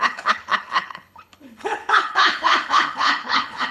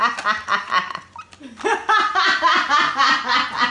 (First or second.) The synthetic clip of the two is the first